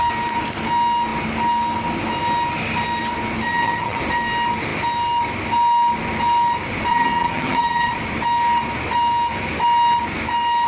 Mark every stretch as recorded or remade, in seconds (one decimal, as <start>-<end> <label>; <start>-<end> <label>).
0.0-3.5 recorded; 3.5-4.0 remade; 4.0-6.9 recorded; 6.9-7.9 remade; 7.9-10.7 recorded